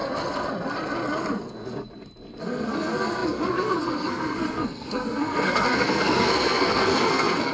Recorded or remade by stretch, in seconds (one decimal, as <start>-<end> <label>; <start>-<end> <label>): 0.0-2.4 recorded; 2.4-7.5 remade